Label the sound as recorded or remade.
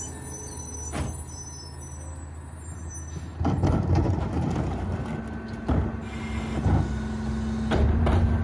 recorded